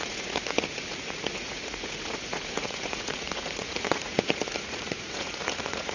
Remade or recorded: remade